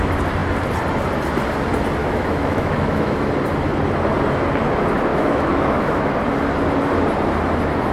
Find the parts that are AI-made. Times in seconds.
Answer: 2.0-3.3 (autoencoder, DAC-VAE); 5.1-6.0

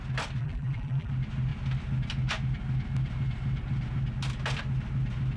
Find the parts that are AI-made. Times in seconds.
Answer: 0.4-1.1 (vocoder, BigVGAN v2)

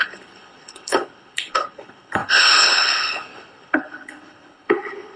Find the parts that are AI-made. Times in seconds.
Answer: 0.0-5.2 (codec, HILCodec)

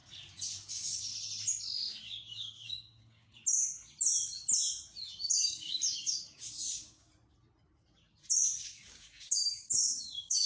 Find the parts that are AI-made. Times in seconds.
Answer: 0.7-1.1 (codec, DAC); 2.0-3.4; 5.3-7.1; 8.6-10.5

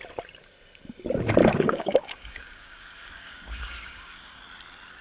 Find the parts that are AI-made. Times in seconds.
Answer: 1.4-4.4 (codec, DAC)